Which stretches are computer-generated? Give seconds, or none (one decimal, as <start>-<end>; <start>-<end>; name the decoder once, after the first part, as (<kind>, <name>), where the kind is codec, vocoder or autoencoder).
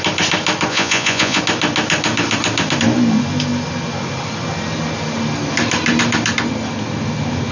0.7-1.4 (vocoder, Vocos)